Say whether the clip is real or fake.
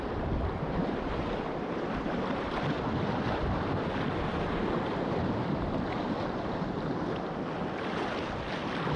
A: real